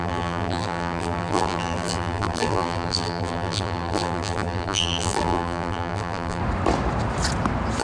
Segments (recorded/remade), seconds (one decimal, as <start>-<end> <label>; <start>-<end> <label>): 0.0-6.4 remade; 6.4-7.8 recorded